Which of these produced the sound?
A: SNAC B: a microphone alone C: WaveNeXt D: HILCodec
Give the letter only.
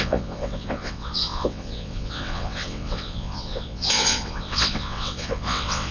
C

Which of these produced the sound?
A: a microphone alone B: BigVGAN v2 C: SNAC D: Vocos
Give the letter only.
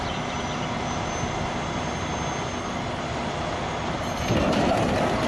A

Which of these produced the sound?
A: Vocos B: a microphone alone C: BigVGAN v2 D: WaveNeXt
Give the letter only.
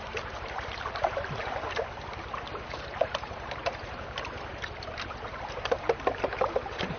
C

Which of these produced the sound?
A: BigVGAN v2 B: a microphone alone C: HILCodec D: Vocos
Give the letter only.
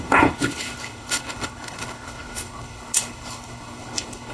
C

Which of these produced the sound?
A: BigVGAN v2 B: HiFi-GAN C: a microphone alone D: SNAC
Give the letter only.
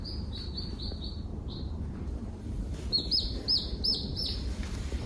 A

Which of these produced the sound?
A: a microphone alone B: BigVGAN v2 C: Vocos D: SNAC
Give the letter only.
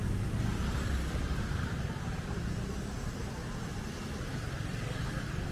A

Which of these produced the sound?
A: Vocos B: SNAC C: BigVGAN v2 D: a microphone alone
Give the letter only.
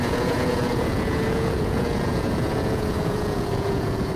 A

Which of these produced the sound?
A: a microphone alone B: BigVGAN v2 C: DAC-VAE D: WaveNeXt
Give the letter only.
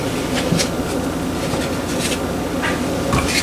A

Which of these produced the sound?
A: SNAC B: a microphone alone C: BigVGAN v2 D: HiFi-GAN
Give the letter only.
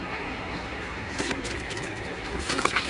A